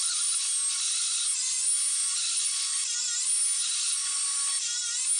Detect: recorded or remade recorded